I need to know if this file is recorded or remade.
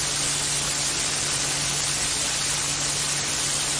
recorded